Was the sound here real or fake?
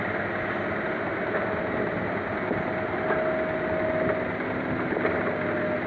real